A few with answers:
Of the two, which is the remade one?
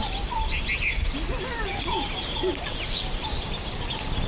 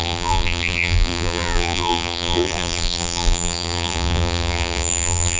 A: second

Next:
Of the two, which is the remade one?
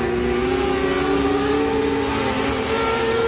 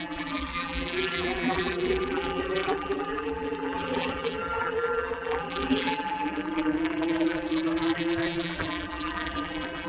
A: second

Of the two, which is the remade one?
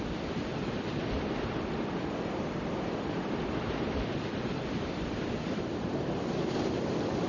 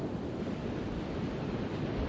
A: first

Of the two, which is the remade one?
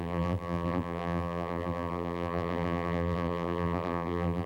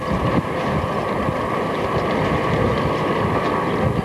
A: first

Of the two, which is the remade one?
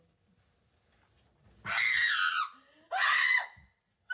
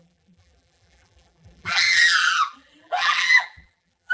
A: second